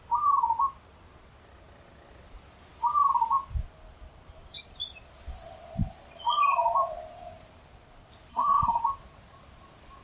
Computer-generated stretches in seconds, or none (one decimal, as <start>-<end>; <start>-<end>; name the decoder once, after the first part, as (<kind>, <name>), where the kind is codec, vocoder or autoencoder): 8.3-8.8 (codec, SNAC)